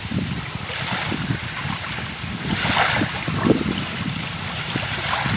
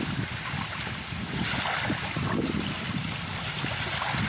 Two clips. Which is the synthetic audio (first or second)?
first